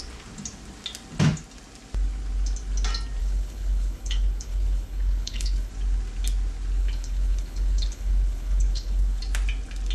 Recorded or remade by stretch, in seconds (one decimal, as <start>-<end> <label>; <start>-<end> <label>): 0.0-3.2 recorded; 3.2-5.7 remade; 5.7-6.8 recorded; 6.8-9.2 remade; 9.2-9.9 recorded